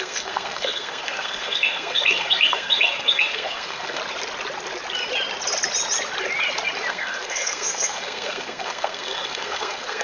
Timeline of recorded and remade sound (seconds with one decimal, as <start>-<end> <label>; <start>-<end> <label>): 0.0-4.0 remade; 4.0-6.9 recorded; 6.9-10.0 remade